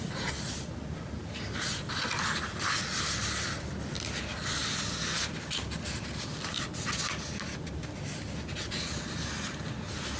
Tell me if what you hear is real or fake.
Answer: real